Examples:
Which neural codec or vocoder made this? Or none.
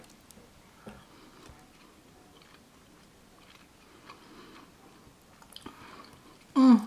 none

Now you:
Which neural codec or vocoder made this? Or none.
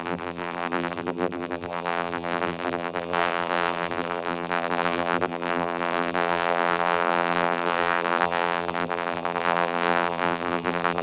vocoder, BigVGAN v2